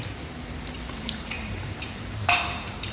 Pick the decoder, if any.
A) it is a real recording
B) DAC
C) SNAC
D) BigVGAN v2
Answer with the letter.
D